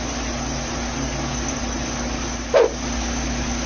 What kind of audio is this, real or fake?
real